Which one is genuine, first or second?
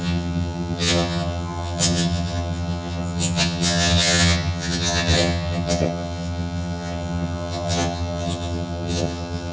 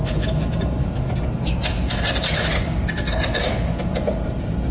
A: second